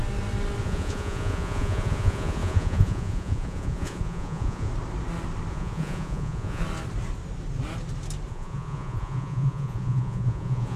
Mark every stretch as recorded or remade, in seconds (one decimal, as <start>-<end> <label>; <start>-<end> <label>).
0.0-0.6 recorded; 0.6-4.7 remade; 4.7-5.5 recorded; 5.5-6.6 remade; 6.6-8.3 recorded; 8.3-10.8 remade